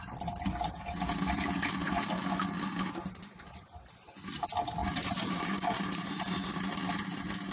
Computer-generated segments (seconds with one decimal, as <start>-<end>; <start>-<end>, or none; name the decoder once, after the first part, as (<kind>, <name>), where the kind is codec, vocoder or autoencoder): 4.8-6.1 (vocoder, BigVGAN v2)